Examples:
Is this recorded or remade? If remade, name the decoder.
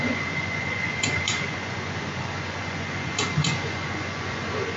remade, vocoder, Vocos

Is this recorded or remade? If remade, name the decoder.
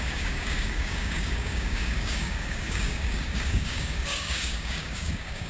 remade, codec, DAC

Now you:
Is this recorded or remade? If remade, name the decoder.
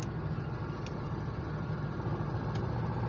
recorded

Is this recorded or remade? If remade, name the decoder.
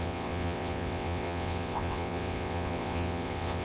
remade, vocoder, WaveNeXt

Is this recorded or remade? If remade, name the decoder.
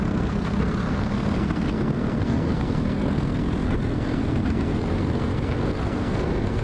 remade, codec, SNAC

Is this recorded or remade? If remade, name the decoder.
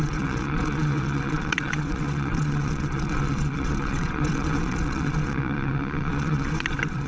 remade, vocoder, WaveNeXt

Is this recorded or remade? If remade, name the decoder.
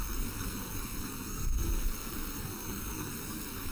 remade, codec, SNAC